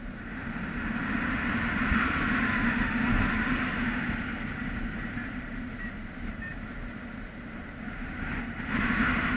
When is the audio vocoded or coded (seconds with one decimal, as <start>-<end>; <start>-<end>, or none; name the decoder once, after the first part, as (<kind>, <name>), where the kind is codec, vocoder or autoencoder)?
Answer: 0.0-3.1 (vocoder, BigVGAN v2); 4.6-6.5; 7.3-9.4